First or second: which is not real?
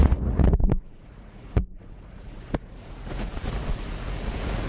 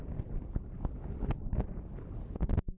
first